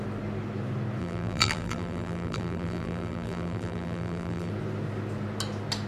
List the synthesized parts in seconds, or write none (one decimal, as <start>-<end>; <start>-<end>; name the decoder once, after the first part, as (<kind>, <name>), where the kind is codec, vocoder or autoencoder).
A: 1.0-4.5 (vocoder, BigVGAN v2)